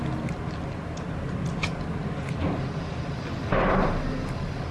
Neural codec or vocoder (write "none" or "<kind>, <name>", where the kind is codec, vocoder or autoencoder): none